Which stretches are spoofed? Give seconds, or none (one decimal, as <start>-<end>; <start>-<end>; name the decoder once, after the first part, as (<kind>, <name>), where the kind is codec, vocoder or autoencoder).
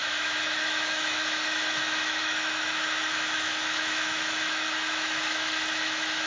0.0-6.3 (autoencoder, DAC-VAE)